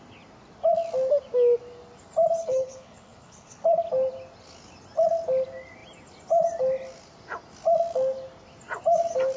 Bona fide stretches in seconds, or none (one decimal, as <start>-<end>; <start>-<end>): 0.0-2.4; 3.8-9.4